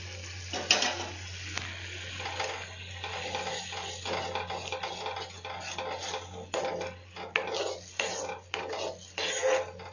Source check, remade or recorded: recorded